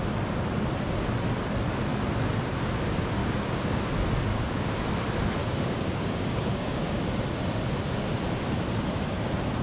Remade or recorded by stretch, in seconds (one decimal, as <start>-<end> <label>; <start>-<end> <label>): 0.0-3.2 recorded; 3.2-3.8 remade; 3.8-4.3 recorded; 4.3-4.9 remade; 4.9-5.4 recorded; 5.4-7.0 remade; 7.0-9.6 recorded